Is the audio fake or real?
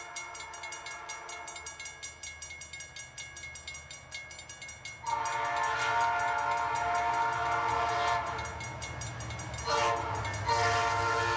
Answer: real